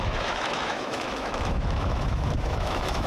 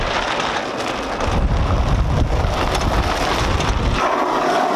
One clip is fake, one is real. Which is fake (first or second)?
first